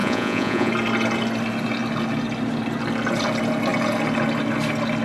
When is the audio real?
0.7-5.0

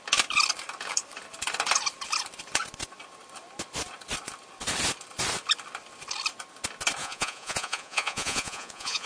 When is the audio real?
0.0-7.0

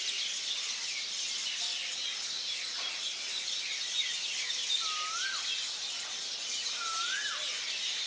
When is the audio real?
0.0-8.1

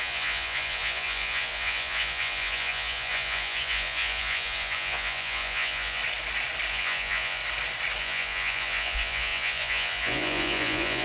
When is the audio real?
6.0-6.7; 7.4-8.0

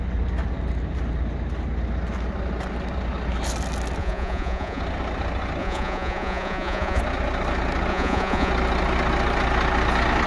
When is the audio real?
0.0-4.0; 4.8-5.6; 7.0-7.9; 8.5-10.3